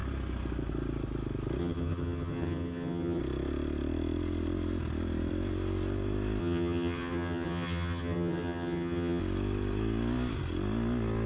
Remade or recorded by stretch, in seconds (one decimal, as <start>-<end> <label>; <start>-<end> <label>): 0.0-1.6 recorded; 1.6-3.2 remade; 3.2-6.4 recorded; 6.4-9.2 remade; 9.2-11.3 recorded